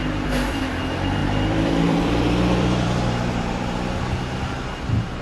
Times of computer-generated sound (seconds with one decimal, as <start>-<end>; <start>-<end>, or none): 0.0-0.6; 1.2-4.0